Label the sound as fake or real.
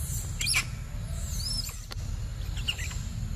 real